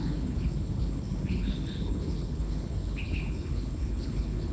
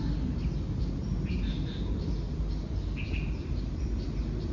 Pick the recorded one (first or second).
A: second